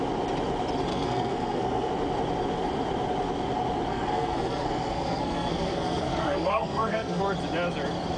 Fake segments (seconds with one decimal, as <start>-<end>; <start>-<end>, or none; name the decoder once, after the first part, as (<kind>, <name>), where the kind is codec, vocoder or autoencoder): 0.9-1.9 (codec, SNAC); 3.9-7.2